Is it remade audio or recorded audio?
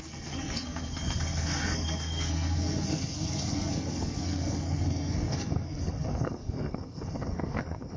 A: remade